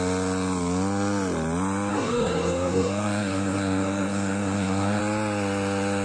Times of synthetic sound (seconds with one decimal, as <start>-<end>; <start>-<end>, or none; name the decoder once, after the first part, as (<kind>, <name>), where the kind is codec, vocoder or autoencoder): 1.9-5.0 (codec, SNAC)

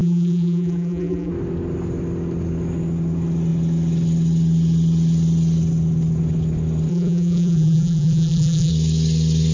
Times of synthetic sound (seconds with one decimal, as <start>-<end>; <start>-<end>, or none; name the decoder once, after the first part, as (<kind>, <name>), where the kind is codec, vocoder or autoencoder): 0.0-1.3 (vocoder, BigVGAN v2); 6.9-8.7

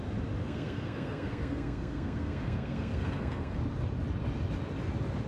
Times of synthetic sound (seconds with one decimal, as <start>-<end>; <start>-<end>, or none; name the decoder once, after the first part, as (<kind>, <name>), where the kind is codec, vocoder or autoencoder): 0.4-3.6 (codec, SNAC)